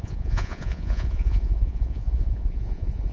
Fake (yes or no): yes